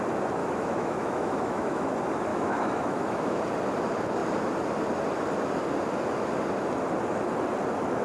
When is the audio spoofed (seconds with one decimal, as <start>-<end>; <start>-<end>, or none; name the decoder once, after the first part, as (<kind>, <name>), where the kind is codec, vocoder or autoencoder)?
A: 0.4-1.9 (autoencoder, DAC-VAE); 2.3-3.4